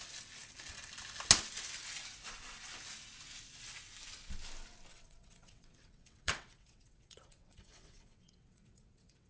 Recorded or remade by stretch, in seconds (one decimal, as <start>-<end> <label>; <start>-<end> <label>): 0.0-4.9 recorded; 4.9-9.3 remade

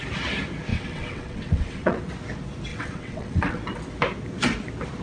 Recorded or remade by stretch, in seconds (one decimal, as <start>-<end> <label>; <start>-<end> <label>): 0.0-0.7 recorded; 0.7-2.0 remade; 2.0-2.7 recorded; 2.7-3.6 remade; 3.6-5.0 recorded

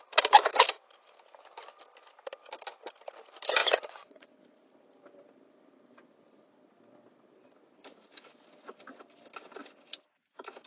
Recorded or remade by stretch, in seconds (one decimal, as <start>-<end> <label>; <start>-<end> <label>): 0.0-3.6 recorded; 3.6-4.4 remade; 4.4-10.7 recorded

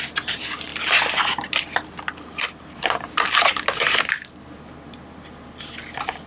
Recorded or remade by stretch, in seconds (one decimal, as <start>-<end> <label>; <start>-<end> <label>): 0.0-6.3 recorded

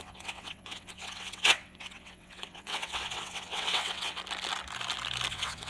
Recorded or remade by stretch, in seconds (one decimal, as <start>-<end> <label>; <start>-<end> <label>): 0.0-4.2 remade; 4.2-5.3 recorded; 5.3-5.7 remade

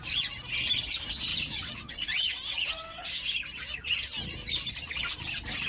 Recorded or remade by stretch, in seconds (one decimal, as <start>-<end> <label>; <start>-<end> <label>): 0.0-1.3 recorded; 1.3-3.1 remade; 3.1-5.7 recorded